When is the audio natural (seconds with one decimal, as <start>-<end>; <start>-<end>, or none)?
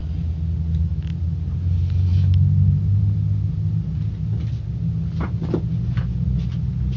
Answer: 0.0-7.0